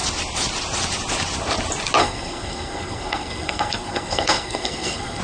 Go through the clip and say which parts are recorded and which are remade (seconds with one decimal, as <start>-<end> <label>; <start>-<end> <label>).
0.0-2.0 recorded; 2.0-5.2 remade